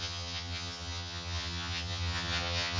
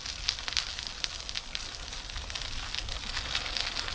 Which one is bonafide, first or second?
second